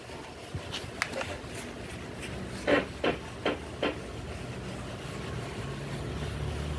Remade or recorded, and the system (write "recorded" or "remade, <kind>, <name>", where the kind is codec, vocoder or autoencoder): recorded